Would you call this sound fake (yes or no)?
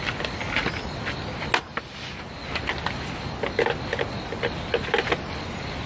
no